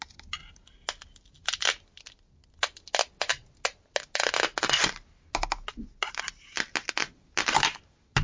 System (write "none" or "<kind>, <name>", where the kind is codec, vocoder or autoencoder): none